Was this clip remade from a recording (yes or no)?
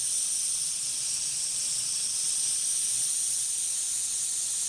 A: no